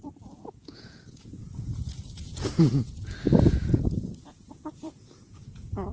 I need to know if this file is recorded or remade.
remade